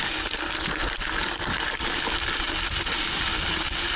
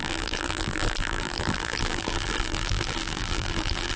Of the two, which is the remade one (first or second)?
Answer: second